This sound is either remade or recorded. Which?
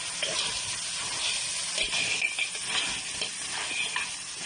recorded